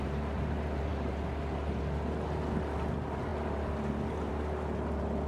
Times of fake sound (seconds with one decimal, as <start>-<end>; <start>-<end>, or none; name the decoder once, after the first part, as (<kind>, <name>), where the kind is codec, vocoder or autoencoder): none

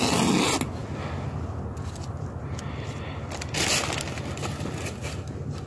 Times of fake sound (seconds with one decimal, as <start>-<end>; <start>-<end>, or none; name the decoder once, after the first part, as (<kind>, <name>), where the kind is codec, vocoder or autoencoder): none

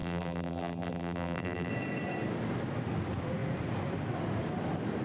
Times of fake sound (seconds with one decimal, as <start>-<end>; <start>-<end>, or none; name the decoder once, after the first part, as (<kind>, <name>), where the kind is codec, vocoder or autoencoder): 0.0-1.7 (vocoder, BigVGAN v2)

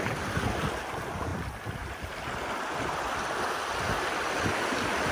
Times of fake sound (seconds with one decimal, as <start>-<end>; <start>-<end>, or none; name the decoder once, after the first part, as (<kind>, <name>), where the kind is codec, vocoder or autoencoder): none